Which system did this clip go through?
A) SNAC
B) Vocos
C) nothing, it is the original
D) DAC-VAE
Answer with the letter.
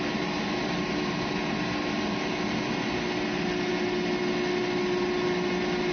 C